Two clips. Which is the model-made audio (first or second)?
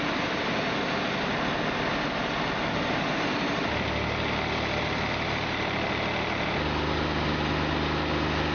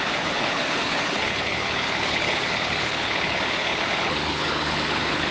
second